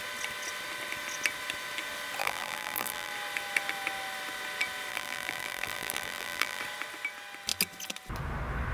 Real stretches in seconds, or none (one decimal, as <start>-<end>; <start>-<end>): 0.0-2.2; 3.1-4.9; 6.6-8.7